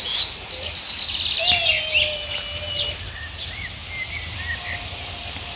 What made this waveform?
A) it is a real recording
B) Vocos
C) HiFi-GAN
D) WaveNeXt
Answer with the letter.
A